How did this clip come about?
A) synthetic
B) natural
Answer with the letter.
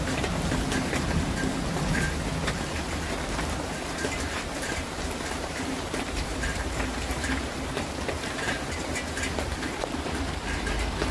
A